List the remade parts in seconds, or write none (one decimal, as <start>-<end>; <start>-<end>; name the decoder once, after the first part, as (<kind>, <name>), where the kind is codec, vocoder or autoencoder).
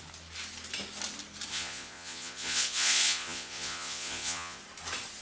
1.5-4.6 (vocoder, Vocos)